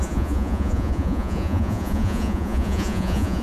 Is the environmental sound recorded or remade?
remade